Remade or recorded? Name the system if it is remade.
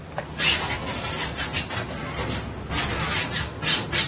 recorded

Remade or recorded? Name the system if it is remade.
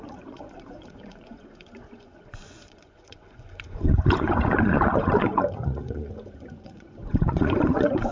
remade, vocoder, Vocos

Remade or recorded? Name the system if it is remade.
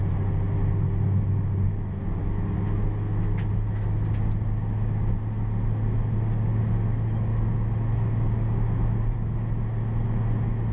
recorded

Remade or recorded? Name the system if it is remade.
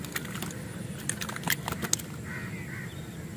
recorded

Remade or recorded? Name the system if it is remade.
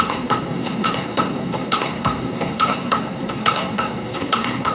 remade, codec, SNAC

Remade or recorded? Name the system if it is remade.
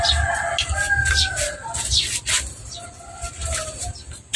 recorded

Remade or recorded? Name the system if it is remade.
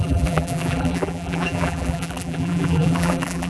remade, vocoder, BigVGAN v2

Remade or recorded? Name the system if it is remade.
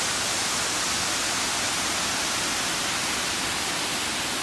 recorded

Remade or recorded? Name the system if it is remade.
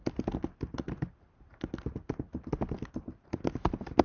recorded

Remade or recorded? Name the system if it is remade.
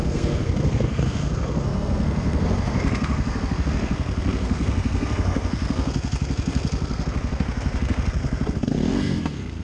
remade, codec, SNAC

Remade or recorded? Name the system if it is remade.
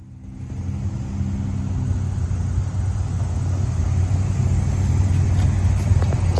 recorded